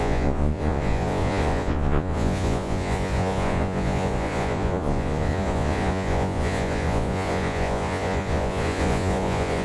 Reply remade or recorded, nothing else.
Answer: remade